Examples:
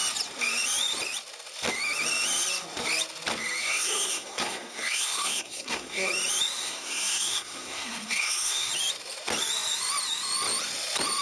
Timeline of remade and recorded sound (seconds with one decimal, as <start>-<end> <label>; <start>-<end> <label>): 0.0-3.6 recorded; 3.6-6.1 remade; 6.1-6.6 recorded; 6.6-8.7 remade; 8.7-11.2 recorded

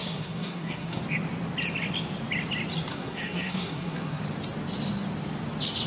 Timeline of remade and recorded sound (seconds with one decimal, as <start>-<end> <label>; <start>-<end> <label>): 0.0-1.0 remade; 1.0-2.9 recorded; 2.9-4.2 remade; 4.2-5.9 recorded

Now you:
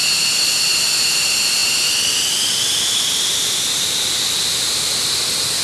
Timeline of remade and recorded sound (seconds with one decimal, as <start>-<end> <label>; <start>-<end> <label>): 0.0-5.6 recorded

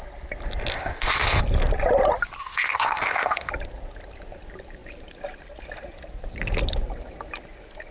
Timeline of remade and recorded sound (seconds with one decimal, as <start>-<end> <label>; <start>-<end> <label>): 0.0-0.7 recorded; 0.7-1.4 remade; 1.4-2.4 recorded; 2.4-3.5 remade; 3.5-7.9 recorded

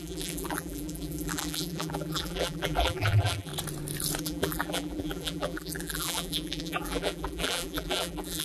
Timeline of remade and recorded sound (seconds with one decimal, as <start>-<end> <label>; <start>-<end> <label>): 0.0-3.5 remade; 3.5-4.2 recorded; 4.2-8.4 remade

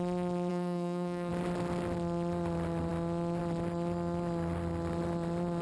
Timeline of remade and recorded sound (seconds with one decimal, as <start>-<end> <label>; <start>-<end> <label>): 0.0-0.5 recorded; 0.5-1.3 remade; 1.3-5.6 recorded